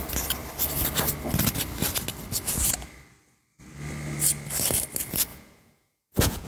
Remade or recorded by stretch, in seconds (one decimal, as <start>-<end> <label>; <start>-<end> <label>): 0.0-5.3 recorded; 5.3-6.5 remade